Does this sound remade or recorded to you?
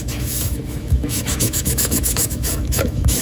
remade